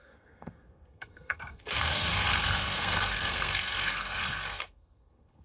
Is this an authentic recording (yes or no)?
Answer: no